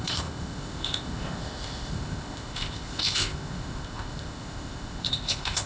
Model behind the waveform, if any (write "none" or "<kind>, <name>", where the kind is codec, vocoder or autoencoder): codec, ZipCodec